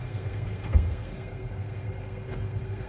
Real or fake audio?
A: fake